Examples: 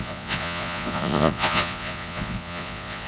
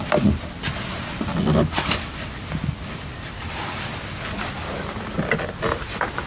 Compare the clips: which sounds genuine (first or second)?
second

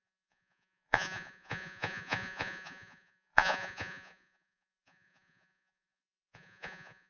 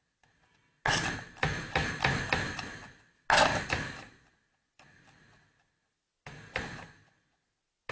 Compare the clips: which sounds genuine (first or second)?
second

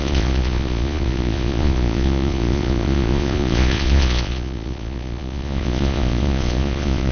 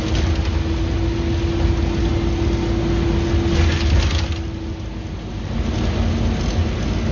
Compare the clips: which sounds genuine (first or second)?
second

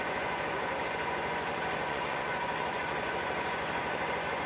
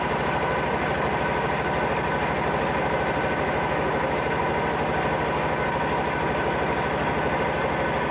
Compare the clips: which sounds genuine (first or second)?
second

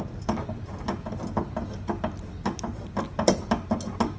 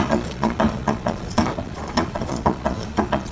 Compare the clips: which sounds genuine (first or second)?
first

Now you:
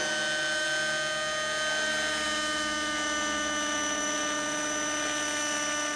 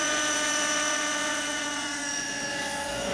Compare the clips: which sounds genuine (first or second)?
first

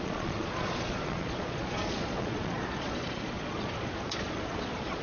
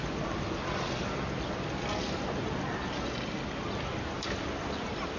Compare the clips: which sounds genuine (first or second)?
second